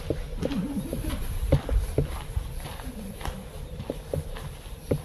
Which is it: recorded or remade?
remade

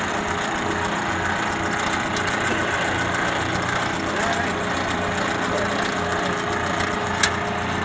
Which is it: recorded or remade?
recorded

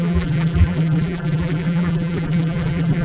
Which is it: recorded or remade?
remade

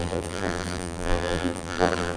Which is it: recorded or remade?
remade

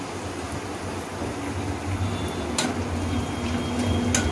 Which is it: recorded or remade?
recorded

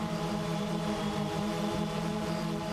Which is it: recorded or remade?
remade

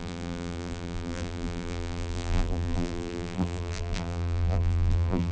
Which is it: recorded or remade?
remade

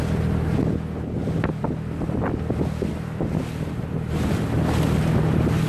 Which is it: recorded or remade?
recorded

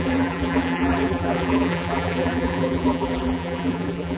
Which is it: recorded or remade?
remade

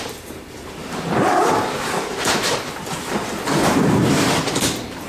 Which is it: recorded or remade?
remade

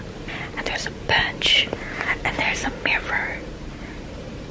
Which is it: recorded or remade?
remade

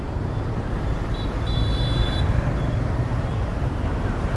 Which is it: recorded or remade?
remade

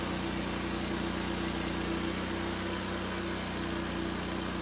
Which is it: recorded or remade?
recorded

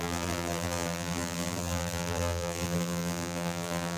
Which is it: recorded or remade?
remade